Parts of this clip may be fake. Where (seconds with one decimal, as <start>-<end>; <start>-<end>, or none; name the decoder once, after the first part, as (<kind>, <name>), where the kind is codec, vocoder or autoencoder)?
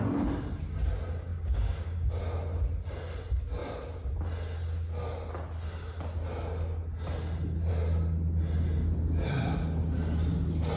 1.3-2.1 (codec, DAC)